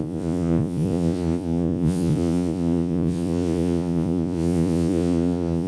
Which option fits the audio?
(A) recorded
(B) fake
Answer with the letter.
B